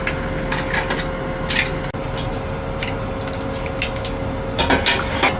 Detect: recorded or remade recorded